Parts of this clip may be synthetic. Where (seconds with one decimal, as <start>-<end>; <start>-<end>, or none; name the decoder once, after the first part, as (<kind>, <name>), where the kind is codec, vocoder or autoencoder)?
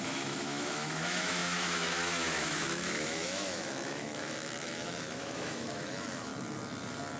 0.0-6.3 (autoencoder, DAC-VAE)